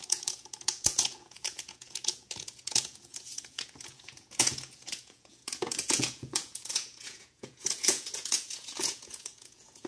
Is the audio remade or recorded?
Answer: remade